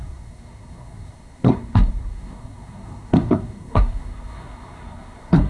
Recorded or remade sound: remade